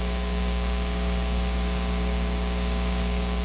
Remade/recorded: remade